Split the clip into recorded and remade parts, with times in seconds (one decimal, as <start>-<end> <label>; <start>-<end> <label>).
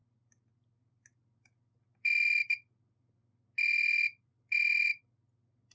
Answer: 0.0-5.7 recorded